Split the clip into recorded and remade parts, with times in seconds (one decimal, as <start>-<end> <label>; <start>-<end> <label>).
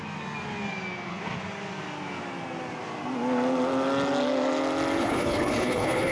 0.0-5.0 recorded; 5.0-6.1 remade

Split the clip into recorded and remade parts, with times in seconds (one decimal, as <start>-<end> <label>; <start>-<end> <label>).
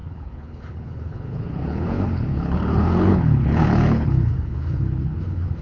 0.0-5.6 remade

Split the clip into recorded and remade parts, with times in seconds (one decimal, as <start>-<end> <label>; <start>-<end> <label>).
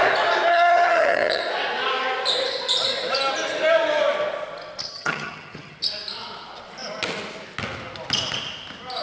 0.0-0.5 recorded; 0.5-1.4 remade; 1.4-4.9 recorded; 4.9-5.8 remade; 5.8-9.0 recorded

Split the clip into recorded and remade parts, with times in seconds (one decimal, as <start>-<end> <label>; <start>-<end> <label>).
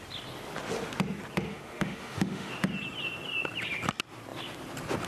0.0-1.5 recorded; 1.5-2.5 remade; 2.5-5.1 recorded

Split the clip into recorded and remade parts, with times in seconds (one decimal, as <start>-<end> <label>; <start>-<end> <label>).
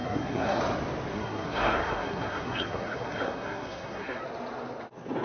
0.0-0.6 remade; 0.6-1.1 recorded; 1.1-4.2 remade; 4.2-5.2 recorded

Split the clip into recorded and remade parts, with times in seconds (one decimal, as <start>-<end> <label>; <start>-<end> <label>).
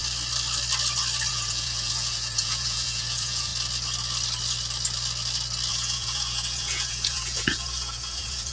0.0-1.3 recorded; 1.3-3.5 remade; 3.5-5.7 recorded; 5.7-8.5 remade